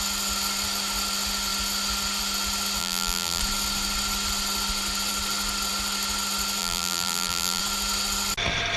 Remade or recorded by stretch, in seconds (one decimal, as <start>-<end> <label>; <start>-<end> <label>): 0.0-2.8 recorded; 2.8-3.4 remade; 3.4-6.6 recorded; 6.6-7.6 remade; 7.6-8.8 recorded